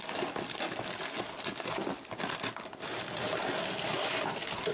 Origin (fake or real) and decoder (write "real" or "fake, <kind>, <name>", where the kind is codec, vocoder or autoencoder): real